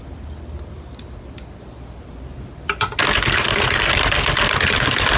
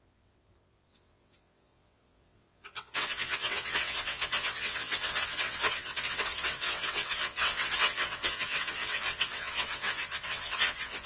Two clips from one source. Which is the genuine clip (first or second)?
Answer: first